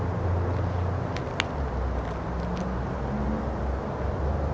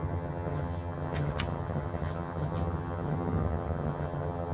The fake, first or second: second